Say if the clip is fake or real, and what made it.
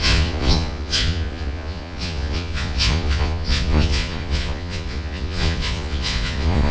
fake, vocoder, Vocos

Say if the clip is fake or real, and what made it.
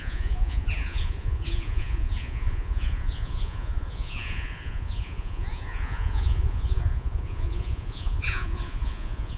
fake, vocoder, Vocos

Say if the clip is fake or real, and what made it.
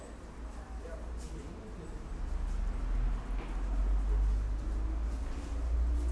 real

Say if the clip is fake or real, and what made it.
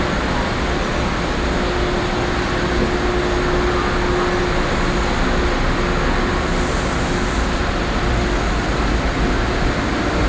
real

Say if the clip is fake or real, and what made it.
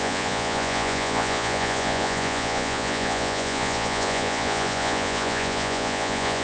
fake, vocoder, Vocos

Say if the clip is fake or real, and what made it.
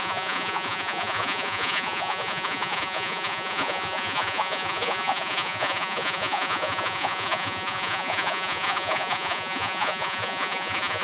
fake, vocoder, Vocos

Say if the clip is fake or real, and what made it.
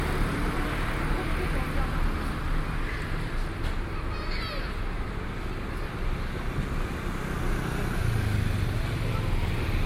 real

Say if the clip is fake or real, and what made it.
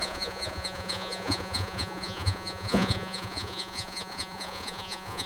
fake, vocoder, Vocos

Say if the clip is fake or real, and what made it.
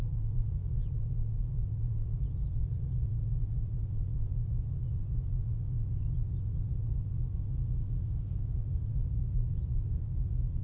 fake, vocoder, Vocos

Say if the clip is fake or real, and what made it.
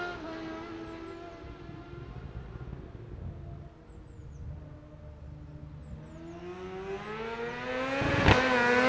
real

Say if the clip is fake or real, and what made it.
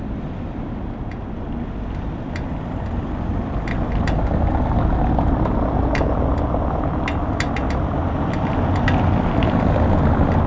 real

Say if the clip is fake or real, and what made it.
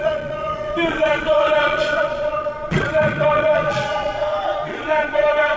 fake, vocoder, Vocos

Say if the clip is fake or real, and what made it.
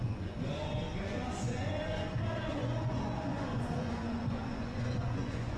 fake, vocoder, Vocos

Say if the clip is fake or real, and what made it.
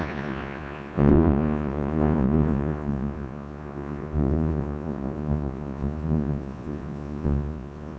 fake, vocoder, Vocos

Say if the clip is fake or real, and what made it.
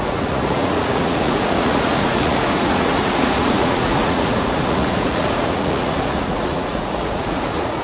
fake, vocoder, Vocos